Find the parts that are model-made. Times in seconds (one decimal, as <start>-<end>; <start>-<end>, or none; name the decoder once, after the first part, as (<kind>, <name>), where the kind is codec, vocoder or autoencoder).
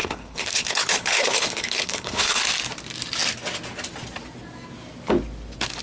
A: 0.0-2.4 (codec, HILCodec)